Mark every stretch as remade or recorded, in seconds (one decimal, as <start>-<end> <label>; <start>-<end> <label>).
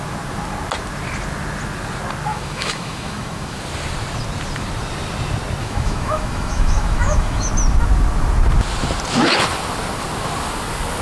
0.0-2.3 recorded; 2.3-3.6 remade; 3.6-5.6 recorded; 5.6-7.5 remade; 7.5-11.0 recorded